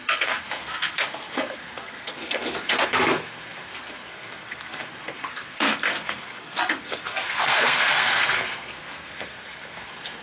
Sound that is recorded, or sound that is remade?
remade